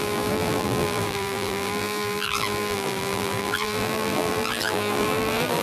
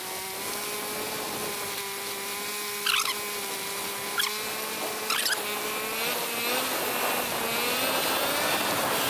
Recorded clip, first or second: second